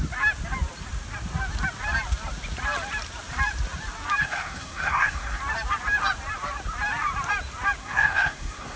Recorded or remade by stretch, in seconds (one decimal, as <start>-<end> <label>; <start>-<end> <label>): 0.0-4.2 recorded; 4.2-5.4 remade; 5.4-7.8 recorded; 7.8-8.8 remade